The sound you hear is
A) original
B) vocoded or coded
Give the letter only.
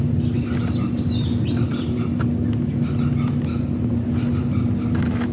A